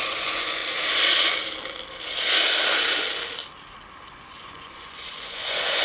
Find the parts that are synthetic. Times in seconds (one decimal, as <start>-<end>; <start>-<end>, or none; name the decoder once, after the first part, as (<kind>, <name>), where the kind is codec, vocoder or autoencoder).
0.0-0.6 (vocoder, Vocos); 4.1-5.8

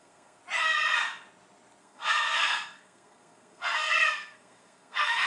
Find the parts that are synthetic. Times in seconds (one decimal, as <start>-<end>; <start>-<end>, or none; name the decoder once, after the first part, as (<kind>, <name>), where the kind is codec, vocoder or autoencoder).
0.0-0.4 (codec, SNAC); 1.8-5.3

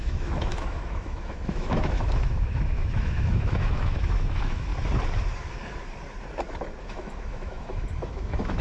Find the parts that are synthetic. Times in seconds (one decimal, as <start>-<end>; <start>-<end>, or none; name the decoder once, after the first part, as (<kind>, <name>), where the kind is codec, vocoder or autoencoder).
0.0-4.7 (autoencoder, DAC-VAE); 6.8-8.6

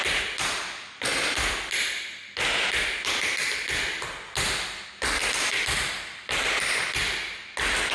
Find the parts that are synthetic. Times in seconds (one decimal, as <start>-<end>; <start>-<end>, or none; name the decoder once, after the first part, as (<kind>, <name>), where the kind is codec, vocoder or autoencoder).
none

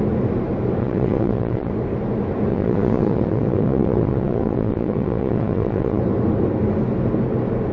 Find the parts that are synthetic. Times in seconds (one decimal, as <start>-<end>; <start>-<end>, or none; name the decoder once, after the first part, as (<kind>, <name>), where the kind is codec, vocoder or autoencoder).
0.8-1.7 (vocoder, WaveNeXt); 2.5-6.0